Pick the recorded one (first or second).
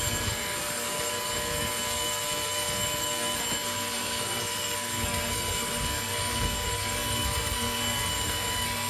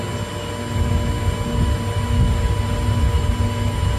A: second